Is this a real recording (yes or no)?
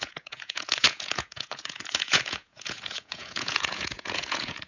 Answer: no